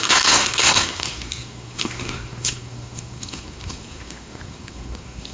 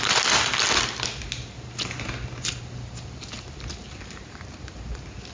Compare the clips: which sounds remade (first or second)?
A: first